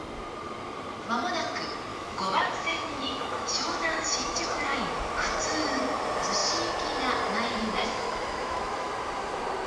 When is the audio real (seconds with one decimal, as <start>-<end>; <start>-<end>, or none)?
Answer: 0.0-1.9; 4.8-7.8; 8.9-9.7